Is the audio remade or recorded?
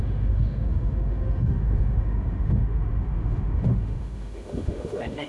remade